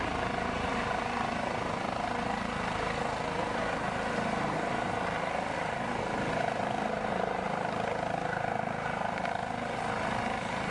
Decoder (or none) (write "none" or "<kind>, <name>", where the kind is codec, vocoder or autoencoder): none